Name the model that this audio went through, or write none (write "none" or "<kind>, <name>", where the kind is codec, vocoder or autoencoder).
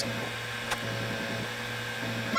none